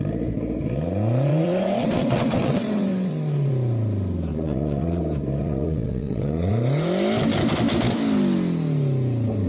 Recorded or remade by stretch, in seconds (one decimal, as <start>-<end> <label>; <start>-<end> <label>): 0.0-1.3 recorded; 1.3-3.5 remade; 3.5-4.3 recorded; 4.3-5.0 remade; 5.0-5.4 recorded; 5.4-6.5 remade; 6.5-9.5 recorded